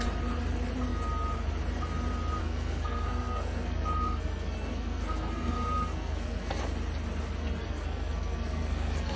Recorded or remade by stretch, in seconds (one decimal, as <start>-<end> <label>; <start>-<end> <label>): 0.0-2.4 recorded; 2.4-6.6 remade; 6.6-7.4 recorded; 7.4-9.2 remade